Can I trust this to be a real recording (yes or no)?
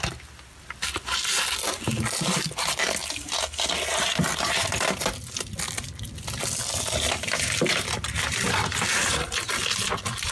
yes